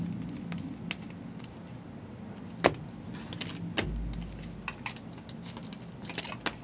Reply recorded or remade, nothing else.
recorded